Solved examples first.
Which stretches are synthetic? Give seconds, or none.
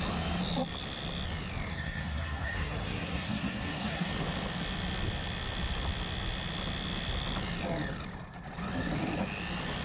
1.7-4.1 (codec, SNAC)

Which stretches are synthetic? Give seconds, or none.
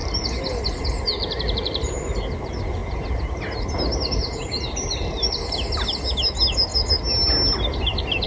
none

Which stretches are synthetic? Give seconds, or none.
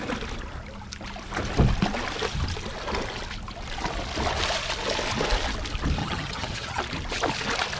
6.0-6.8 (vocoder, HiFi-GAN)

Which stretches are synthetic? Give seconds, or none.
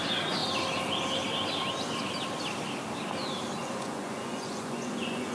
3.6-5.3 (vocoder, Vocos)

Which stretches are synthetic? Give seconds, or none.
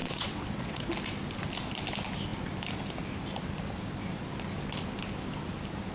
0.0-0.9 (vocoder, WaveNeXt)